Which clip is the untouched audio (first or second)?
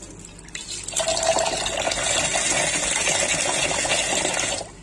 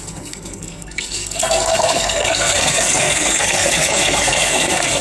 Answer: first